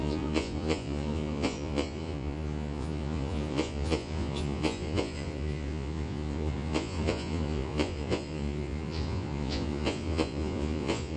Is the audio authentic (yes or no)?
no